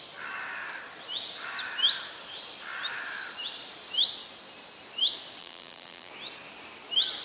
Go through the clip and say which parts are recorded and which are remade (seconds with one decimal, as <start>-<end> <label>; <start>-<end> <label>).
0.0-5.4 recorded; 5.4-6.1 remade; 6.1-7.2 recorded